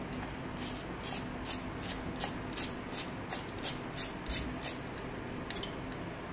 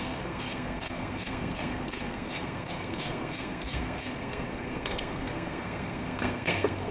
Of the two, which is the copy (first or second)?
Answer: second